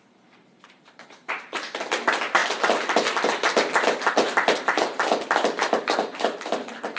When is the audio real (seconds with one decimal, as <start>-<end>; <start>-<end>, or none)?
0.0-0.4; 1.8-7.0